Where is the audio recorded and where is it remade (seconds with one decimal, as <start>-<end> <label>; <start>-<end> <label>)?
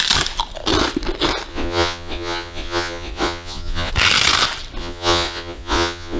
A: 0.0-1.5 recorded; 1.5-3.9 remade; 3.9-4.8 recorded; 4.8-6.2 remade